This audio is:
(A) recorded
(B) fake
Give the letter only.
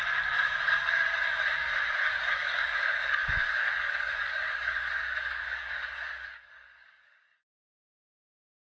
B